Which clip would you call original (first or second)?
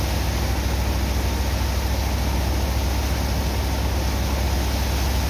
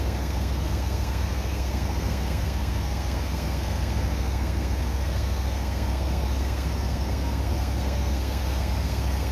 first